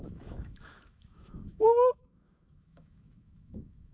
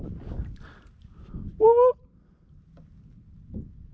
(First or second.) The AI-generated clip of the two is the first